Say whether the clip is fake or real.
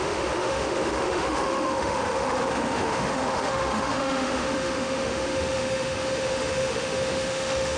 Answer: fake